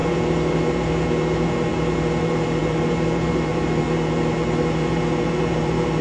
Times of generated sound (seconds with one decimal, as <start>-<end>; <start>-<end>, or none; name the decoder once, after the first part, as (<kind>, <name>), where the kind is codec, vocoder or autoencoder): 0.0-6.0 (vocoder, BigVGAN v2)